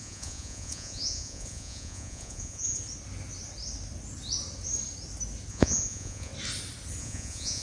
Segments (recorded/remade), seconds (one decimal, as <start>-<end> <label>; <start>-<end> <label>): 0.0-2.8 remade; 2.8-5.5 recorded; 5.5-6.3 remade; 6.3-7.0 recorded; 7.0-7.6 remade